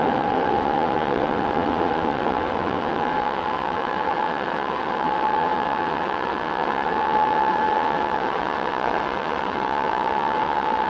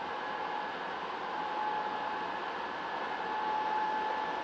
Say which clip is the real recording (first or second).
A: second